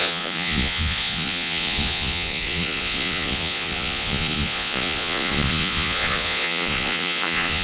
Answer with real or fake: fake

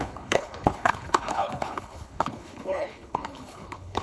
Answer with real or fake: fake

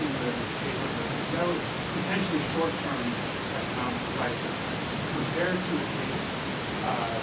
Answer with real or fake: real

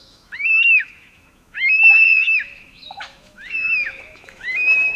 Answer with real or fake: fake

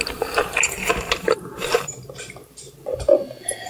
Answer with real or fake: fake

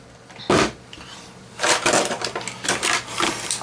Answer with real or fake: fake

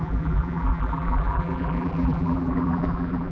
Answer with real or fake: fake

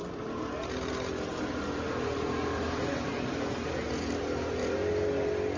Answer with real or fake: real